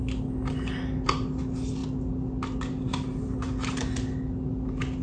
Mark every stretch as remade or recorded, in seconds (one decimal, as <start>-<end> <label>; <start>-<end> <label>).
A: 0.0-5.0 recorded